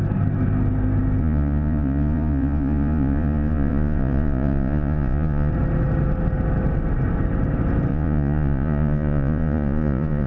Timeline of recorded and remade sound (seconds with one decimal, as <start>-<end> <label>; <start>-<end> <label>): 0.0-1.2 recorded; 1.2-5.5 remade; 5.5-7.9 recorded; 7.9-10.3 remade